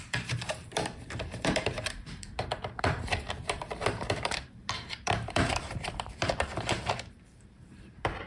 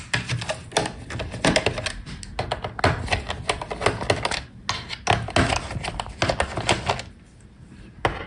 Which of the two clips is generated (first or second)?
first